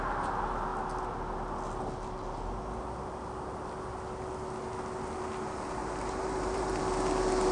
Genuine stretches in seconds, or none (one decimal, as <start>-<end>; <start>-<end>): 0.0-5.8; 6.8-7.5